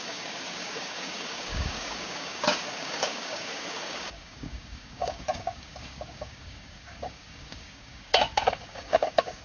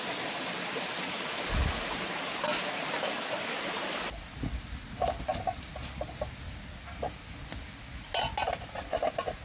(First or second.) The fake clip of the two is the first